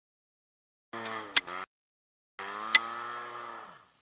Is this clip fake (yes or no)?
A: no